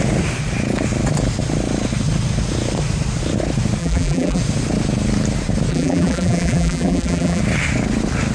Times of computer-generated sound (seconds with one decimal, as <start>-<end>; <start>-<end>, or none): 3.8-4.4; 5.7-7.4